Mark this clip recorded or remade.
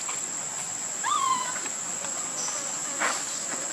remade